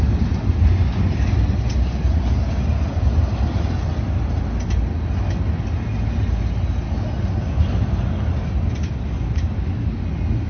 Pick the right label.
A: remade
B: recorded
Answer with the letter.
B